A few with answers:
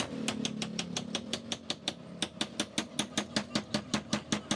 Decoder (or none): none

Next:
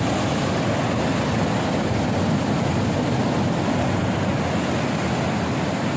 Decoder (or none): none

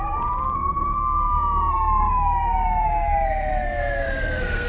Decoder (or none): codec, SNAC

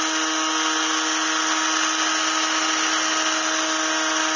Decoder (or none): none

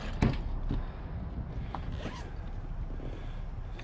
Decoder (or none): none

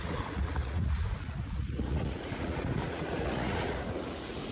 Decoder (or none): vocoder, Vocos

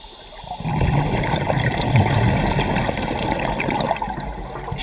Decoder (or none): none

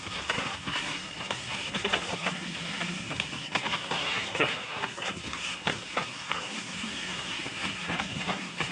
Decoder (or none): codec, SNAC